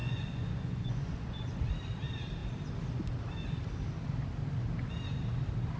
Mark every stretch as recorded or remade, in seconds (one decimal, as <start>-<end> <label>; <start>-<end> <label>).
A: 0.0-1.6 remade; 1.6-5.8 recorded